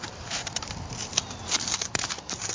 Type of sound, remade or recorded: remade